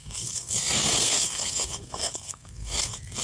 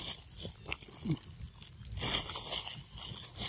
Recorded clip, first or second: second